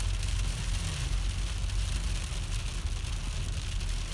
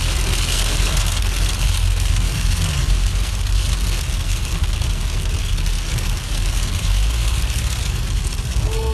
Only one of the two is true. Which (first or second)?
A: first